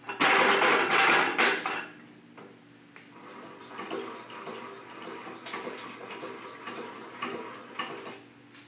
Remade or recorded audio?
recorded